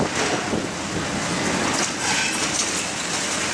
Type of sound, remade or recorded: recorded